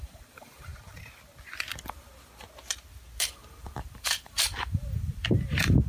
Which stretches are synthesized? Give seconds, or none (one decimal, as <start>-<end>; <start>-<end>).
0.0-0.7; 3.3-5.9